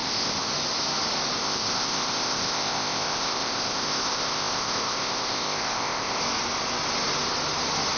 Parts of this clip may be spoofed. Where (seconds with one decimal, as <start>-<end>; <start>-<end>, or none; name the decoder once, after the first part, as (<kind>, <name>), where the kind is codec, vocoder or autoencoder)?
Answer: 0.0-0.5 (codec, ZipCodec); 1.4-6.2